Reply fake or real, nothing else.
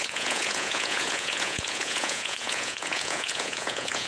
fake